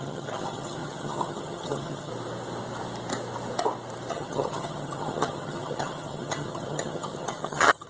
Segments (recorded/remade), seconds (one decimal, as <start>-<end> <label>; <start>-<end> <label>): 0.0-2.1 remade; 2.1-4.1 recorded; 4.1-7.9 remade